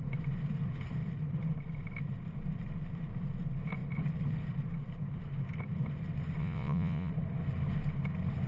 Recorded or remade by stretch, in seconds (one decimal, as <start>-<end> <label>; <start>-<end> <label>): 0.0-6.4 recorded; 6.4-7.1 remade; 7.1-8.5 recorded